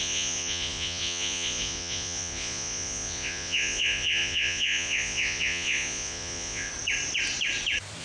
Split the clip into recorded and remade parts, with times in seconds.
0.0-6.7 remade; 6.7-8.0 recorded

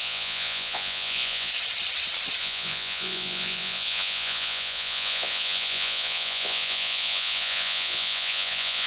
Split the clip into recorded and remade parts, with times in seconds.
0.0-1.5 remade; 1.5-2.4 recorded; 2.4-8.9 remade

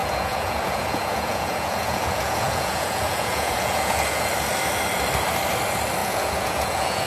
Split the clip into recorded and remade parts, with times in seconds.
0.0-4.3 remade; 4.3-6.0 recorded; 6.0-7.1 remade